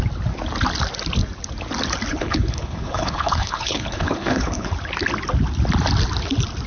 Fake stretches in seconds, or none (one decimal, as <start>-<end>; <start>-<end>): 2.1-4.7

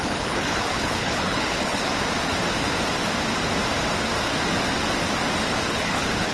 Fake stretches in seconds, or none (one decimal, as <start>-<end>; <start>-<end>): 0.0-1.9; 5.7-6.3

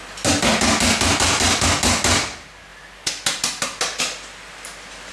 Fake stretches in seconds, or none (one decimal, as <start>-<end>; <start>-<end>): none

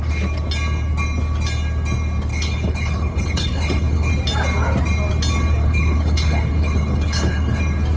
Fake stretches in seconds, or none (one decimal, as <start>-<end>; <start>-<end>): 2.3-4.1; 5.6-7.6